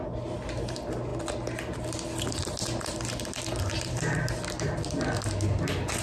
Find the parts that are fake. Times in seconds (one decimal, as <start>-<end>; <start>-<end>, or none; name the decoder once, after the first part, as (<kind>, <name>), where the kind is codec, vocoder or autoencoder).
none